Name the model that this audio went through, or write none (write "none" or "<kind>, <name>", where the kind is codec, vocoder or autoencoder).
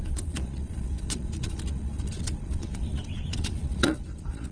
vocoder, Vocos